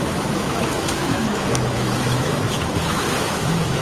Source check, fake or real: fake